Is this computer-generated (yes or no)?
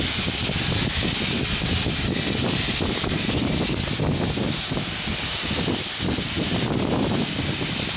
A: no